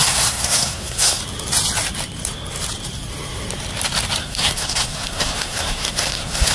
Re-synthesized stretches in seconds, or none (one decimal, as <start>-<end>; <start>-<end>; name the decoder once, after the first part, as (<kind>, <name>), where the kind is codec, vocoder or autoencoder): 0.0-1.2 (codec, SNAC); 4.2-6.5